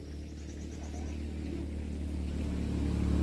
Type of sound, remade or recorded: recorded